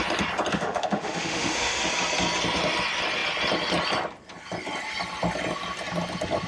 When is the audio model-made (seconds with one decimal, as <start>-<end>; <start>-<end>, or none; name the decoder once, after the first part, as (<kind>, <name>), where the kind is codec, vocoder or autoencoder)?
0.5-1.8 (autoencoder, DAC-VAE)